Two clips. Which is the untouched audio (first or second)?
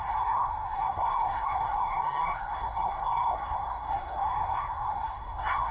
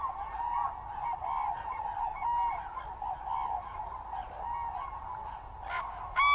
second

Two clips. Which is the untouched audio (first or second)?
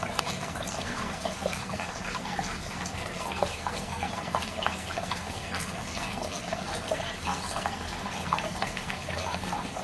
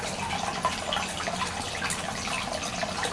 second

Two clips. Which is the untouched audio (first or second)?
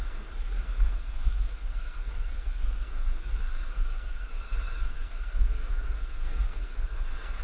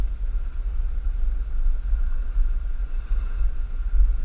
second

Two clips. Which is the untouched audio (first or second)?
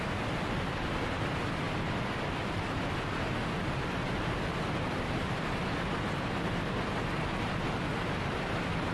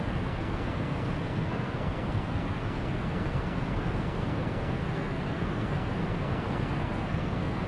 first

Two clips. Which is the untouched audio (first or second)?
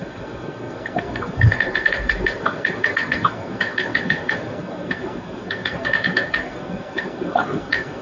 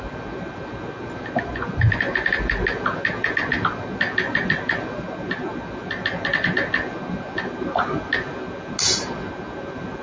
second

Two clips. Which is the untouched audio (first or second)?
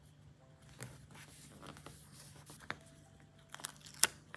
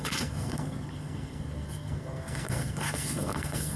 first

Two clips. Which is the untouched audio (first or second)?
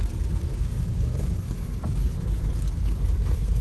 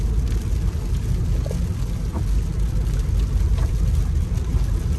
second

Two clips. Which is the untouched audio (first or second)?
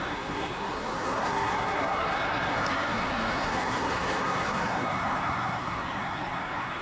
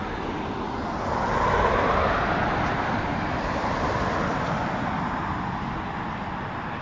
second